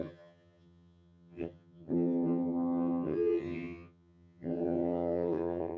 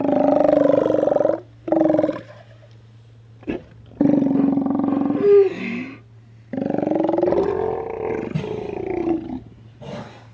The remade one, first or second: first